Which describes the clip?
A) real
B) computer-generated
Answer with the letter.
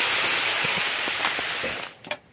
A